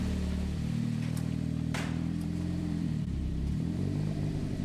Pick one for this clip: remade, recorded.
remade